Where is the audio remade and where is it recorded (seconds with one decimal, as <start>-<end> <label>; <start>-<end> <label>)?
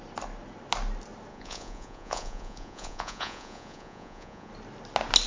0.0-1.3 recorded; 1.3-4.5 remade; 4.5-5.3 recorded